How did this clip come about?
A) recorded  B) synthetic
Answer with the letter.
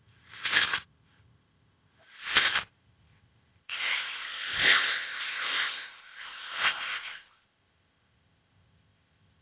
B